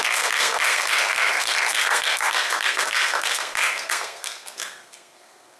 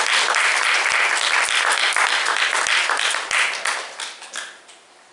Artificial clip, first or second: first